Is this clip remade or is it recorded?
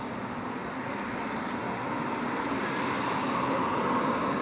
recorded